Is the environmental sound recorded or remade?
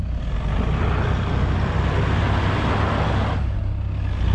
recorded